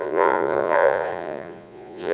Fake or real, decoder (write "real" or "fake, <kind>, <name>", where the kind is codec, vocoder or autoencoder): fake, vocoder, Vocos